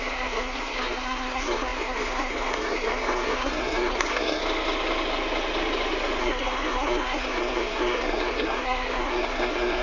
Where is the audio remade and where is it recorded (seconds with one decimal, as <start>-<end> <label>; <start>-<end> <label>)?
0.0-4.4 remade; 4.4-6.2 recorded; 6.2-9.8 remade